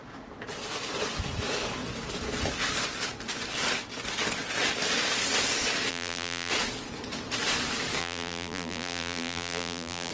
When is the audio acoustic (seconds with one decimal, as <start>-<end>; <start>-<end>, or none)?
0.0-5.9; 6.5-8.0